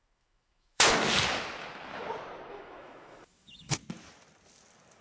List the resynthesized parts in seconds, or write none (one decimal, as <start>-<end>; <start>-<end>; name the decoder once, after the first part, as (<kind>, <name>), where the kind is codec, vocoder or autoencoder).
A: 0.0-0.9 (autoencoder, DAC-VAE); 2.5-3.8